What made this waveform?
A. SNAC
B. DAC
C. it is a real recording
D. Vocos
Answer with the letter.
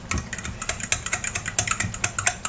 C